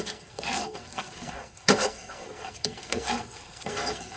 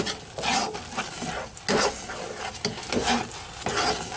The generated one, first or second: first